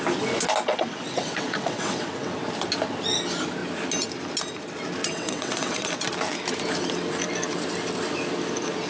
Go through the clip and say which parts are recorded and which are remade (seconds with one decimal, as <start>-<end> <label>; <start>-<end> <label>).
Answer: 0.0-0.7 recorded; 0.7-2.4 remade; 2.4-5.0 recorded; 5.0-6.0 remade; 6.0-8.9 recorded